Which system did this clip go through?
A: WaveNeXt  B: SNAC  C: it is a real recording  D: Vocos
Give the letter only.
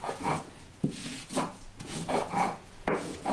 D